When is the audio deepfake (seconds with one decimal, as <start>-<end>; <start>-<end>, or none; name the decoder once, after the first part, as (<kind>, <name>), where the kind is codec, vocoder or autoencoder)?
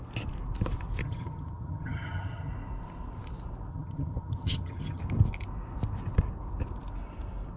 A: 1.0-2.5 (vocoder, HiFi-GAN); 3.7-5.0